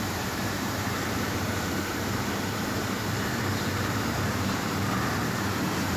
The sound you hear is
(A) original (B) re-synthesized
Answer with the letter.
B